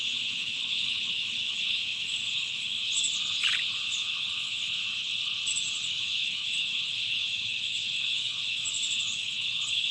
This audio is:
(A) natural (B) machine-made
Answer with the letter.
B